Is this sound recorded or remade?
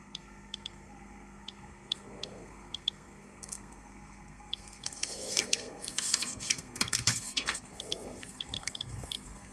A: remade